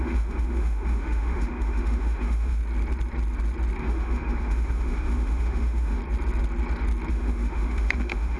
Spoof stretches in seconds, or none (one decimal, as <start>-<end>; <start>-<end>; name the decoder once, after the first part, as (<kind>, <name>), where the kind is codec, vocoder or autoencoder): 0.0-2.6 (autoencoder, DAC-VAE); 3.8-6.0; 7.1-8.4